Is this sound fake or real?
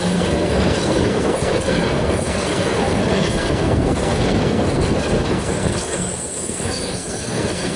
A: fake